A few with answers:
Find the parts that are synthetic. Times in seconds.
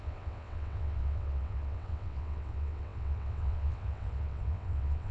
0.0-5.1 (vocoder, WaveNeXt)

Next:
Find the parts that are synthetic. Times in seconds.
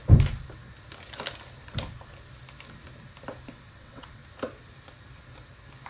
3.5-4.2 (vocoder, WaveNeXt)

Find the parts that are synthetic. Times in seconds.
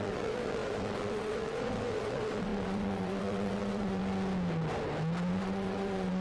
0.0-4.0 (vocoder, WaveNeXt); 5.3-6.2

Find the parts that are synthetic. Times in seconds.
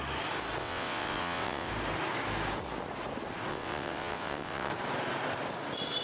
0.6-1.7 (vocoder, WaveNeXt); 3.5-4.7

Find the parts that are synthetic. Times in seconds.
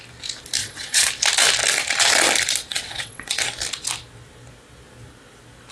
0.6-1.1 (vocoder, WaveNeXt); 2.7-3.4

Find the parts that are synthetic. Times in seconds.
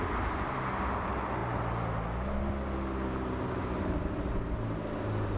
none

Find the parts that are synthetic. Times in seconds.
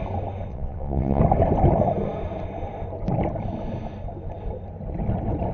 0.5-1.2 (vocoder, WaveNeXt)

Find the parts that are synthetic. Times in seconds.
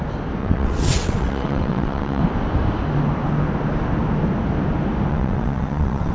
0.4-2.2 (vocoder, WaveNeXt); 5.1-6.1